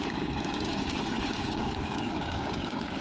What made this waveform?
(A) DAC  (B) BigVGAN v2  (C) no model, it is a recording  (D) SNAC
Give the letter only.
A